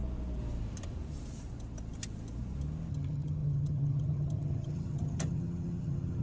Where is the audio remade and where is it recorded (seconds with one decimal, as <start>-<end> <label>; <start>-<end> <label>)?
0.0-2.9 recorded; 2.9-6.2 remade